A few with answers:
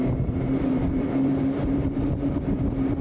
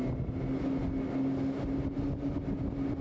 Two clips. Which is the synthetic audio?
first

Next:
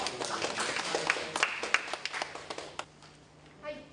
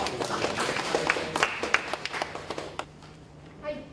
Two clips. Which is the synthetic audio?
second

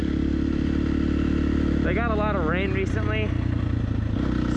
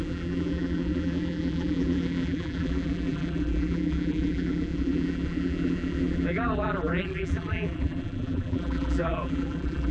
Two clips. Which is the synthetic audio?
second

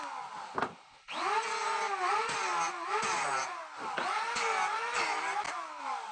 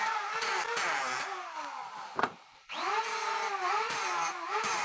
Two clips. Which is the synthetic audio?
second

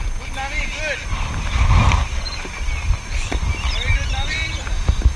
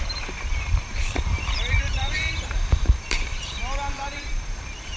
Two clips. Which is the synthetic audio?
second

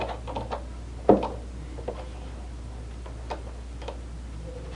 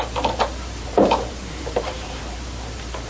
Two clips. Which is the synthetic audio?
second